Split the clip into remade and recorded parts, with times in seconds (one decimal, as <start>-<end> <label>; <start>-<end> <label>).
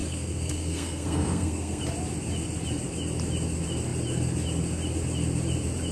0.0-1.8 remade; 1.8-5.9 recorded